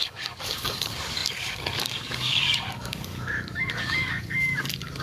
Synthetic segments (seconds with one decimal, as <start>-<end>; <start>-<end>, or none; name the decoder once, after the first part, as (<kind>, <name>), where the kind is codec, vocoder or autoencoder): 0.0-5.0 (codec, DAC)